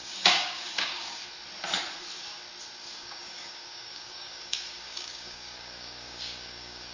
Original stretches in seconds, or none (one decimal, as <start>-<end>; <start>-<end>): 1.2-2.8